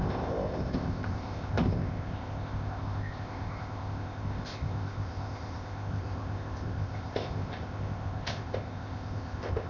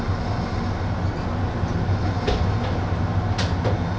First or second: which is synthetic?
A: first